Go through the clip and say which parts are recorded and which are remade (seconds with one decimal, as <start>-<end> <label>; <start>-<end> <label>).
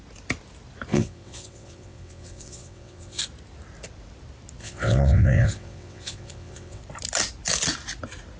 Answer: 0.0-0.9 recorded; 0.9-3.2 remade; 3.2-4.6 recorded; 4.6-6.8 remade; 6.8-8.4 recorded